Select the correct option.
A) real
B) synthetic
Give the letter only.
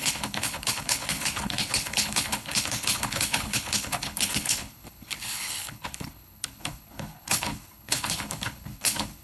B